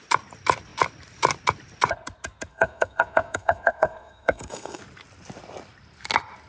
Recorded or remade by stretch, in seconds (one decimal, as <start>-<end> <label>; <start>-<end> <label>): 0.0-2.5 recorded; 2.5-4.8 remade; 4.8-6.5 recorded